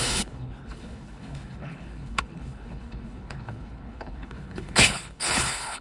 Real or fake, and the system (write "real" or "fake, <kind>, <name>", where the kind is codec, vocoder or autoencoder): fake, codec, HILCodec